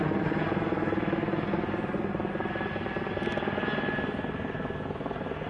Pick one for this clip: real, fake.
real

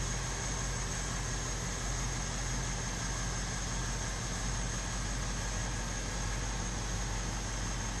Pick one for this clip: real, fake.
real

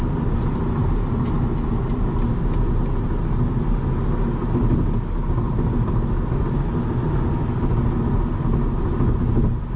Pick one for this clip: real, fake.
real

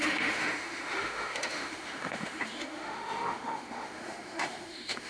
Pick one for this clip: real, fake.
fake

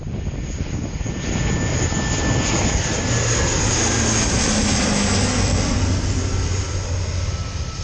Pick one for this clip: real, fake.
real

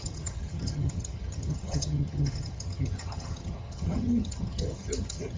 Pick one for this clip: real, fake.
fake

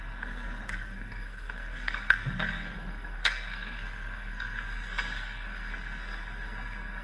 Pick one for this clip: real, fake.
fake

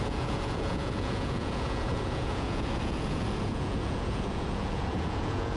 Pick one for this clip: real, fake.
fake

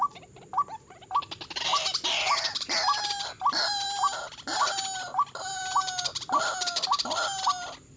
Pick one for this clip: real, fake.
real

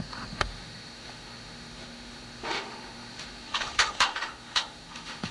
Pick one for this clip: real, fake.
fake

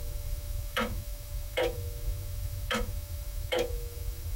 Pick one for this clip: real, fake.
fake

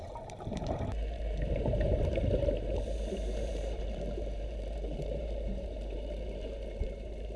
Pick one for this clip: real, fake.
fake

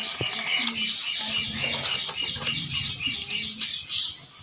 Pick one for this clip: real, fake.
real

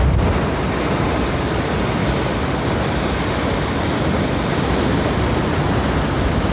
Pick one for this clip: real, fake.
real